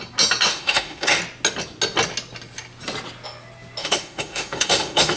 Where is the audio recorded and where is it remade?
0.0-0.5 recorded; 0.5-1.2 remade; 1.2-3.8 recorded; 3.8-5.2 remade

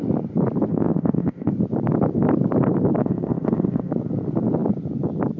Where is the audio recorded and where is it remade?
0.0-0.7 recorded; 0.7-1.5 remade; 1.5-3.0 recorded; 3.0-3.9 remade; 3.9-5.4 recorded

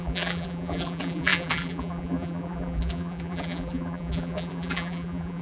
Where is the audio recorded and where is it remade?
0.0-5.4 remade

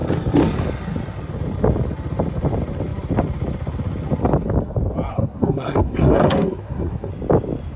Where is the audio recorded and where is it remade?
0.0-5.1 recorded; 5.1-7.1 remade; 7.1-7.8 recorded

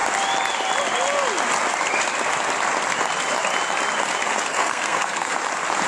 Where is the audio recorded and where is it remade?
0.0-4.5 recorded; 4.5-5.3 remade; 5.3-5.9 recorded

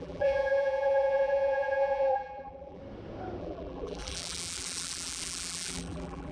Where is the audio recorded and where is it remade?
0.0-2.8 remade; 2.8-3.4 recorded; 3.4-6.3 remade

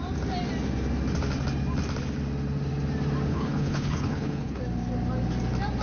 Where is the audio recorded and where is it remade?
0.0-3.3 recorded; 3.3-4.6 remade; 4.6-5.8 recorded

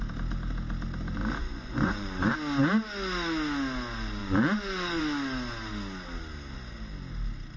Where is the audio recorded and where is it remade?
0.0-1.4 recorded; 1.4-2.3 remade; 2.3-4.2 recorded; 4.2-5.0 remade; 5.0-7.6 recorded